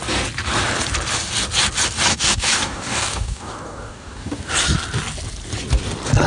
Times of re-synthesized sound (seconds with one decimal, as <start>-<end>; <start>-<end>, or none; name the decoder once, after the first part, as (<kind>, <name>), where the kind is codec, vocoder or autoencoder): 2.1-4.5 (codec, DAC)

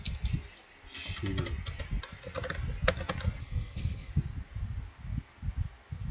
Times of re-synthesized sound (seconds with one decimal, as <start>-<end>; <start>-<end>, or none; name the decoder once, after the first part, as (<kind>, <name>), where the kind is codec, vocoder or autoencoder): 3.4-4.1 (codec, SNAC)

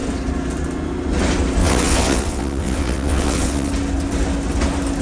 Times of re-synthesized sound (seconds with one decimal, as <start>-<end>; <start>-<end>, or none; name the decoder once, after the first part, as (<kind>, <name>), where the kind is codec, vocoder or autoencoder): 1.6-3.7 (vocoder, WaveNeXt)

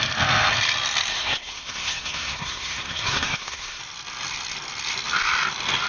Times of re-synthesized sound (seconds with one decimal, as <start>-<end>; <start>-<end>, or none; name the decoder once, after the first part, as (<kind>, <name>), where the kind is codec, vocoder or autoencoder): 1.1-3.8 (codec, SNAC)

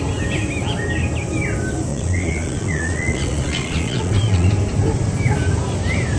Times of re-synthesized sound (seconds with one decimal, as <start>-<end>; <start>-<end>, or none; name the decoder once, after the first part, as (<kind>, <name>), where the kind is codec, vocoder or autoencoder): 1.9-4.5 (vocoder, Vocos)

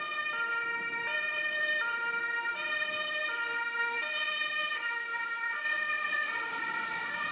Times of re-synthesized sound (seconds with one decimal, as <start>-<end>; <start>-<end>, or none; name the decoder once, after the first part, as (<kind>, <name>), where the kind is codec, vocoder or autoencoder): none

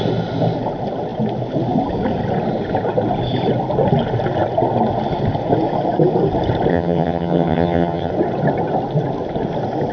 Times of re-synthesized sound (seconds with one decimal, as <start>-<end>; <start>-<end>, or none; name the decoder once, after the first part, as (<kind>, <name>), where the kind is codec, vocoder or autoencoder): 6.7-8.1 (vocoder, HiFi-GAN)

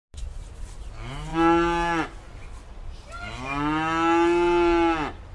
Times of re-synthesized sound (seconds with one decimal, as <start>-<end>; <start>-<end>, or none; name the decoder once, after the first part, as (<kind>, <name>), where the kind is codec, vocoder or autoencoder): 2.6-3.1 (vocoder, BigVGAN v2)